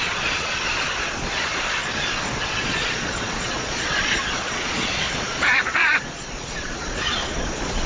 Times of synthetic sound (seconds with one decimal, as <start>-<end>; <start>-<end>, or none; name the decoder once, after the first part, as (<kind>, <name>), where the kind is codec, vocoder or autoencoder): 0.0-1.8 (vocoder, Vocos); 2.4-7.9